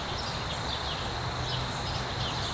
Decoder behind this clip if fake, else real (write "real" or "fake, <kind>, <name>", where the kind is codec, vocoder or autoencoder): real